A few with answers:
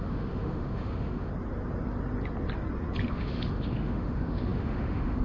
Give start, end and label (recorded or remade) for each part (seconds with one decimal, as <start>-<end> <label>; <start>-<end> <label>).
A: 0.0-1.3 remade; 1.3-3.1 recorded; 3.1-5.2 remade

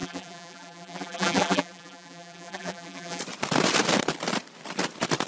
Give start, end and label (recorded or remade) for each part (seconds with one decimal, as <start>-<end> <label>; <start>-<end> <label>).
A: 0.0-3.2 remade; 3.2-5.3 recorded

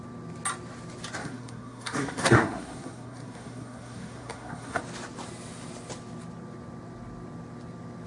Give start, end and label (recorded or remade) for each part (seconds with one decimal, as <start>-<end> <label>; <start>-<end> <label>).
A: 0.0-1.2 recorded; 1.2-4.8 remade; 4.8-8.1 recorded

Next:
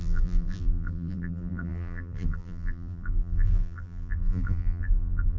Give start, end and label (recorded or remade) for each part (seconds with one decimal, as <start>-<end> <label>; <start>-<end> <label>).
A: 0.0-5.4 remade